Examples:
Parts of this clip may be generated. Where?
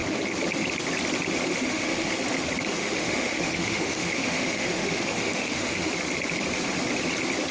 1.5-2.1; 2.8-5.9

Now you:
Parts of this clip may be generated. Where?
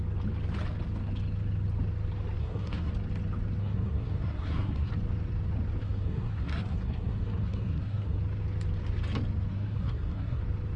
2.4-2.9; 3.6-4.9; 5.8-8.2; 9.5-10.4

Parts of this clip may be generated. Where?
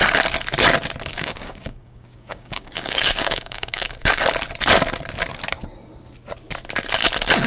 1.1-4.2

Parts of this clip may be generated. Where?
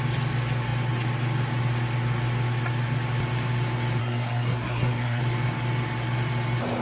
4.0-5.2